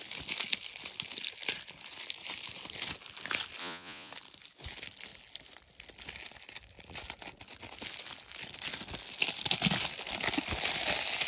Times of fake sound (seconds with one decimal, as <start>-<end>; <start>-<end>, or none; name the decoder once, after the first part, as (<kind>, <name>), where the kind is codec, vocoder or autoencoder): 3.6-4.1 (vocoder, Vocos)